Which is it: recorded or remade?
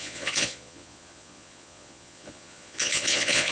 remade